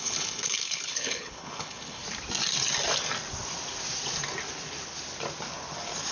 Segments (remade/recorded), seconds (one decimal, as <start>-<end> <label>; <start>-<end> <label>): 0.0-2.0 remade; 2.0-6.1 recorded